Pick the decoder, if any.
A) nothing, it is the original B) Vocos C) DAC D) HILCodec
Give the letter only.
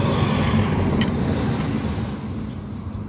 A